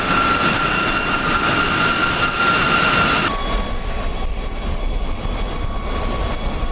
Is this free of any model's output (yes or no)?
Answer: yes